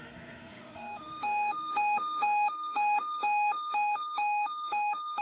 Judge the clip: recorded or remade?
remade